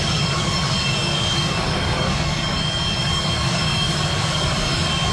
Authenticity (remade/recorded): remade